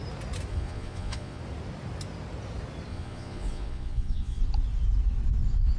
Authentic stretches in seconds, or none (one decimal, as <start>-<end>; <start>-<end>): 0.0-0.5; 1.4-2.9; 4.4-5.8

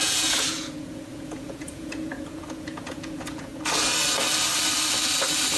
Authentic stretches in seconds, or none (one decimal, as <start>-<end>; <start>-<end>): 3.5-5.6

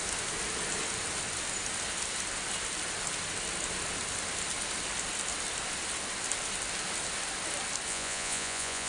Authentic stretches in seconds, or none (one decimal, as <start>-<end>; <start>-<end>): 0.0-7.9

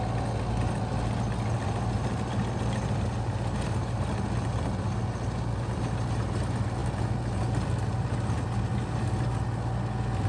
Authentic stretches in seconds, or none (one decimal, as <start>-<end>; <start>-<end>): 0.0-10.3

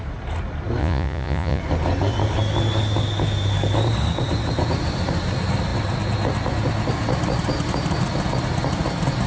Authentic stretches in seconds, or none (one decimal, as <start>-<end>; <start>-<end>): 0.0-0.8; 1.6-9.3

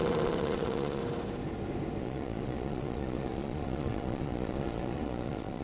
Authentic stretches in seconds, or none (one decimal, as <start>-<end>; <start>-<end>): 1.0-2.0